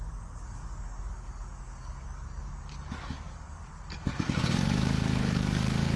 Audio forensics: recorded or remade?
remade